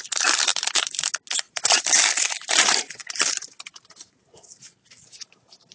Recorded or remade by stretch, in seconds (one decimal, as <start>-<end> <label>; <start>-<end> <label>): 0.0-0.5 remade; 0.5-1.4 recorded; 1.4-1.9 remade; 1.9-2.4 recorded; 2.4-5.7 remade